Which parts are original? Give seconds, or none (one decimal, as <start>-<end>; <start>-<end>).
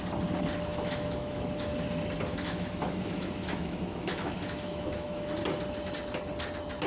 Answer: 0.0-0.7; 1.7-2.3; 5.3-6.9